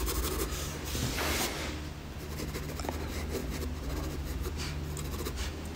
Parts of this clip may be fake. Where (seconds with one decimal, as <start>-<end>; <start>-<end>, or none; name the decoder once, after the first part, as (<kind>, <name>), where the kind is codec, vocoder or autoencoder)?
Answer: none